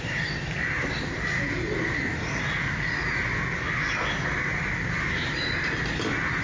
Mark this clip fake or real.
real